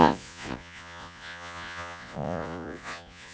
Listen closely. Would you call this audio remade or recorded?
remade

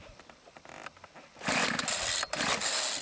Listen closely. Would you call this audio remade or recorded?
recorded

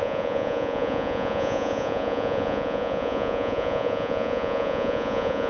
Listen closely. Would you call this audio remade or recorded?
remade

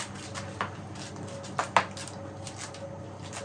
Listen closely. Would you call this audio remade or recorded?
recorded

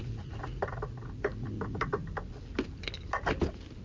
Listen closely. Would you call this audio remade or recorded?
recorded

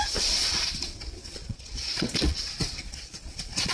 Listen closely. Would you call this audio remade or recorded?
remade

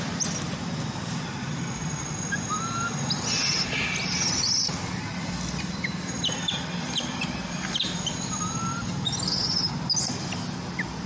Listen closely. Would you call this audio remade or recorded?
recorded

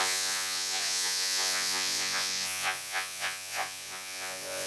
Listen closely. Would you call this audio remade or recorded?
remade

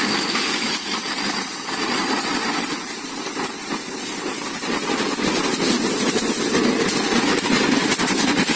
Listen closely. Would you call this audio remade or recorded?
recorded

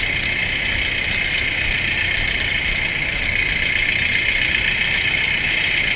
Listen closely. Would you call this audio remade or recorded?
recorded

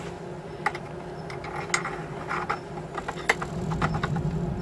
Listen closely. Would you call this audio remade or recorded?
recorded